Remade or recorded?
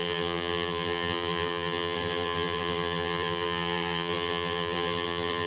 remade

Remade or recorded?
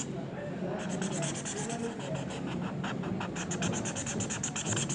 remade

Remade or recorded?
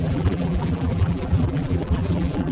remade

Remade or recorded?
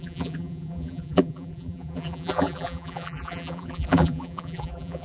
remade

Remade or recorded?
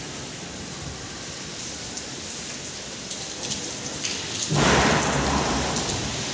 recorded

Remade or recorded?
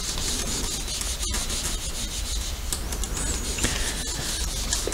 recorded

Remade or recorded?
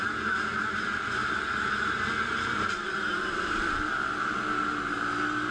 recorded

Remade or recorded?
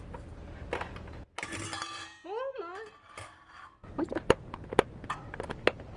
recorded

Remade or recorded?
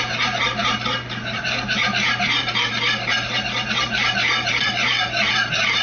remade